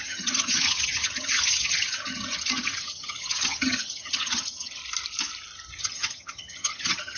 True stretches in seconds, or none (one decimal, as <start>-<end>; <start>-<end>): 4.8-5.8